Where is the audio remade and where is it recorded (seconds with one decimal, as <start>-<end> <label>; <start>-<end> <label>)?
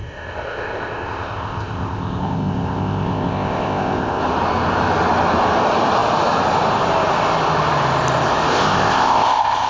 0.0-4.2 remade; 4.2-8.5 recorded; 8.5-9.7 remade